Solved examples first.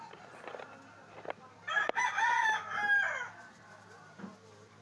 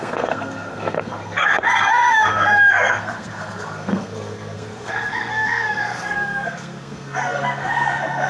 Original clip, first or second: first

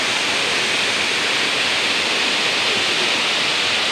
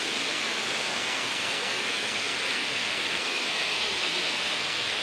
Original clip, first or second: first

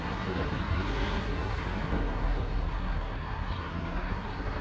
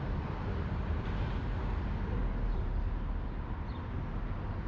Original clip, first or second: second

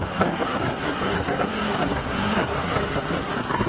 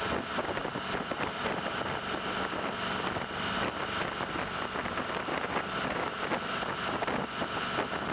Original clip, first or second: second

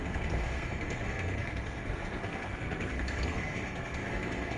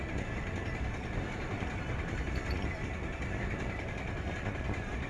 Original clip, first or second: second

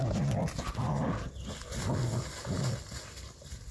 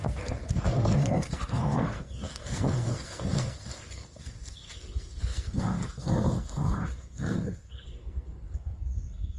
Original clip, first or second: first